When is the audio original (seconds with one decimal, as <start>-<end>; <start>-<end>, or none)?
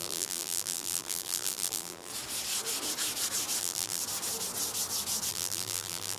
2.1-3.6; 4.0-5.3